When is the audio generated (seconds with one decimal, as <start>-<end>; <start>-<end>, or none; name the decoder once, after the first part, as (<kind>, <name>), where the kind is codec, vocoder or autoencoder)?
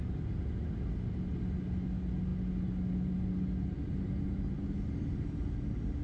none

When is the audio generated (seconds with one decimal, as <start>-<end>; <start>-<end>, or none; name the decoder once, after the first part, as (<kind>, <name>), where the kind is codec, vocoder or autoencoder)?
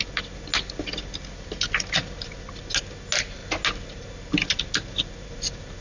none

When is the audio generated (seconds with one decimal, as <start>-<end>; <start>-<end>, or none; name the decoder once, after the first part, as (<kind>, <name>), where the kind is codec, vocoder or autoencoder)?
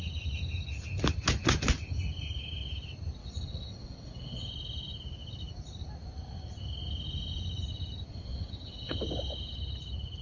3.2-4.5 (vocoder, WaveNeXt); 8.1-9.0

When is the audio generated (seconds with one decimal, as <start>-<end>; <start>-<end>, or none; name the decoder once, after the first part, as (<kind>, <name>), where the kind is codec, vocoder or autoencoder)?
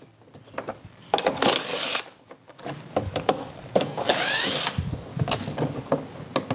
0.7-4.6 (codec, DAC); 5.1-5.9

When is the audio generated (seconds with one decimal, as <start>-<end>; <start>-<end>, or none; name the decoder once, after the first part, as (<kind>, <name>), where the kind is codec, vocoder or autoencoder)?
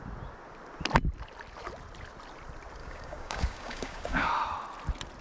2.8-4.3 (codec, DAC)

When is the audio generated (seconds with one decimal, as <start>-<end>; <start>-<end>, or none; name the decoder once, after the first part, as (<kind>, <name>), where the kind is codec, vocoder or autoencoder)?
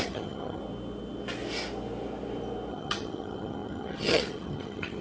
0.0-0.6 (vocoder, HiFi-GAN); 2.7-5.0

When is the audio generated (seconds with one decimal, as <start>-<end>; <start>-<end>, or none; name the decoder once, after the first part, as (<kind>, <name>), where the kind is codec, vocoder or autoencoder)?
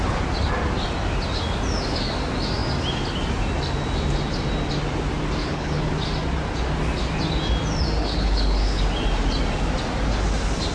5.4-5.9 (codec, HILCodec); 8.0-8.8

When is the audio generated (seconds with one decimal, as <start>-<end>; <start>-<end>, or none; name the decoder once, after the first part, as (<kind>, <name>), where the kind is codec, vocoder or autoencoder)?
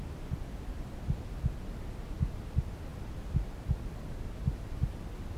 none